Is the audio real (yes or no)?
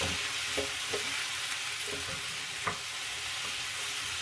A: yes